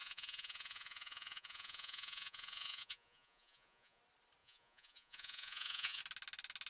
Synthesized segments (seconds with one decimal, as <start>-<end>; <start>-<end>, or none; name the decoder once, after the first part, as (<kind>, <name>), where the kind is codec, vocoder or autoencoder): 0.0-4.0 (vocoder, Vocos); 4.4-6.0